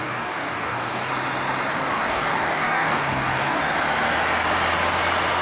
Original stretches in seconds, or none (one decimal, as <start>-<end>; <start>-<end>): 1.1-1.7; 3.6-5.4